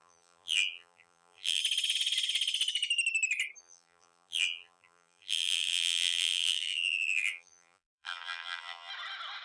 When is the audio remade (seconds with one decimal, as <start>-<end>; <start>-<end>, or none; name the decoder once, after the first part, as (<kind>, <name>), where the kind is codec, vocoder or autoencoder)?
0.0-1.6 (vocoder, BigVGAN v2); 3.6-8.9